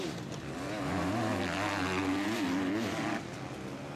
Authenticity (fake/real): real